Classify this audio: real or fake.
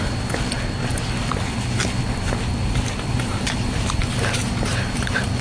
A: real